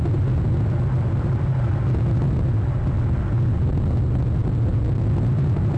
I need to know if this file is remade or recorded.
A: recorded